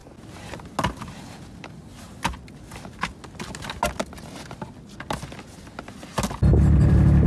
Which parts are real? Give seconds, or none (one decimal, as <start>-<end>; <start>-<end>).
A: 0.0-7.3